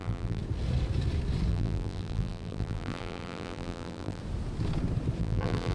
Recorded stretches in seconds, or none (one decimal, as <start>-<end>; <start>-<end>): 0.4-1.5; 4.2-5.2